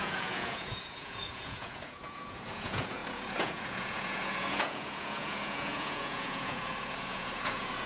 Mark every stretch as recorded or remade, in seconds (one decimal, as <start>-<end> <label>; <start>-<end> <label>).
0.0-7.9 remade

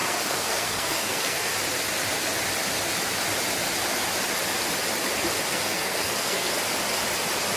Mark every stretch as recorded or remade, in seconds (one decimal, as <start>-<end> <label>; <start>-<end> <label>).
0.0-1.5 remade; 1.5-5.5 recorded; 5.5-6.5 remade; 6.5-7.6 recorded